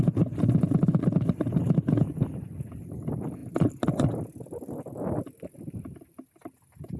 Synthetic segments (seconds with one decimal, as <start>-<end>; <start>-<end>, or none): none